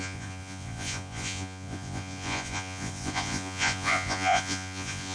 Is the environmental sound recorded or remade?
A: remade